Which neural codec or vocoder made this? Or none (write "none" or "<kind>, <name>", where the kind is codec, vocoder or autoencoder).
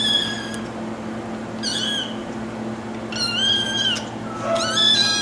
none